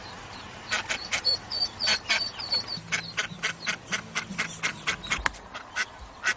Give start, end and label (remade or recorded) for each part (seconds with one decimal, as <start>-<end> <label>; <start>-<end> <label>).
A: 0.0-6.4 recorded